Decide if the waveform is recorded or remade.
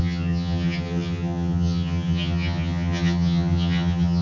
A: remade